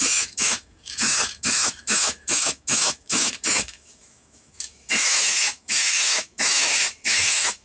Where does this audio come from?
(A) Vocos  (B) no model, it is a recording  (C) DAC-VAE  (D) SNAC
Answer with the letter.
C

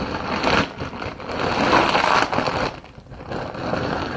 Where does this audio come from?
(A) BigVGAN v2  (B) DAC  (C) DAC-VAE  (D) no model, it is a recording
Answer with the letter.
D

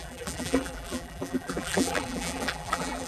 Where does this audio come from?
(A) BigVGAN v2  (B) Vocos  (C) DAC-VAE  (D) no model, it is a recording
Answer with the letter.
A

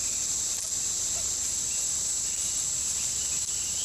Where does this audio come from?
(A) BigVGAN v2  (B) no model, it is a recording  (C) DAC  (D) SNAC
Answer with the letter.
A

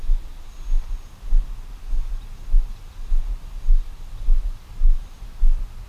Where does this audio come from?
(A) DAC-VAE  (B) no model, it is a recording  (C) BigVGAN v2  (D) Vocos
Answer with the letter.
B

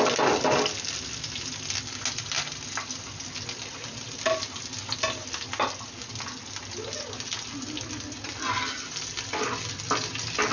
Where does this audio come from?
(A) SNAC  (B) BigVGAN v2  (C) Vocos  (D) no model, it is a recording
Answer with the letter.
D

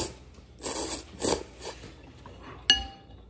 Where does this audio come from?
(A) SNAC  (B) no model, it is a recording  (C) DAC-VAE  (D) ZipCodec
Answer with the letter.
B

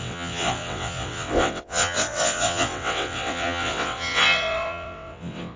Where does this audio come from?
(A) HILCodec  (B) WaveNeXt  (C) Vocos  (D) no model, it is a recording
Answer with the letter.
B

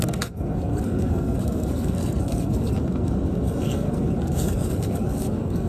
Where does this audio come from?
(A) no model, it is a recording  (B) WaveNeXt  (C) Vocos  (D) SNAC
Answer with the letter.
D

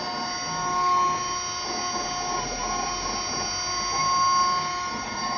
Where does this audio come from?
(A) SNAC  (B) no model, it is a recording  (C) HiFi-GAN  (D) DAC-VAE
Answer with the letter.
B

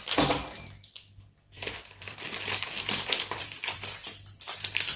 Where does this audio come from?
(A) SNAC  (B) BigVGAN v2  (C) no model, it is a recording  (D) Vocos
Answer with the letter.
B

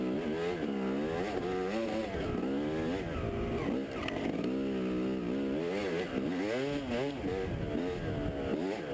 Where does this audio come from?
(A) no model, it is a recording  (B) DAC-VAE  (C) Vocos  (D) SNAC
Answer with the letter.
A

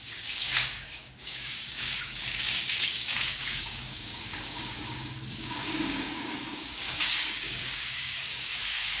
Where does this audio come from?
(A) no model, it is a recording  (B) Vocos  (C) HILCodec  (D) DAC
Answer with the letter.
D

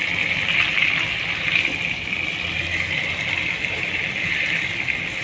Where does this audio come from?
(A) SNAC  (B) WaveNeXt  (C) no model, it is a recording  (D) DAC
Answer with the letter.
C